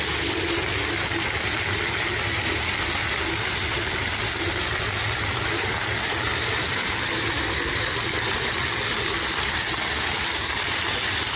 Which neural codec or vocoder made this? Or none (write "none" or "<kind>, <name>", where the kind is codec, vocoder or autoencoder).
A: none